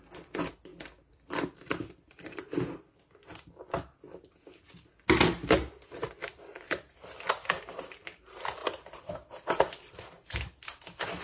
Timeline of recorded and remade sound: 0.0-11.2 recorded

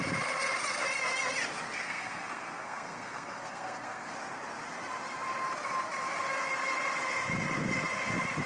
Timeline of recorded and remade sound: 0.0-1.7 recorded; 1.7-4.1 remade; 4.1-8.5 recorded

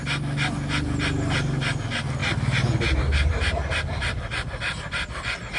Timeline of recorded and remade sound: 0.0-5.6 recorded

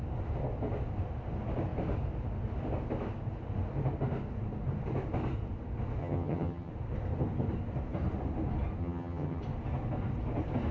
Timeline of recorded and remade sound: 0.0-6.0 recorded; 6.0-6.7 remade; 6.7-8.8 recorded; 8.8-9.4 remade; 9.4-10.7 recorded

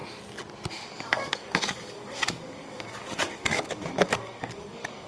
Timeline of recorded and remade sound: 0.0-0.7 recorded; 0.7-5.1 remade